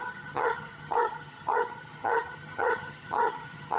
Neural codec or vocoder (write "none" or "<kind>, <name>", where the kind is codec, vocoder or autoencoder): vocoder, HiFi-GAN